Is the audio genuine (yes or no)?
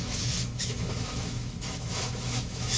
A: no